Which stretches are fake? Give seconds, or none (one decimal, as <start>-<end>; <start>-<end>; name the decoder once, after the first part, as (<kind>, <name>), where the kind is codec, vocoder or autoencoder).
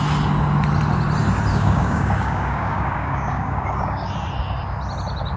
1.5-4.1 (codec, DAC)